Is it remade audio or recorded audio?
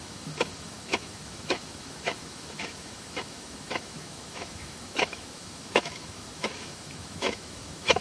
remade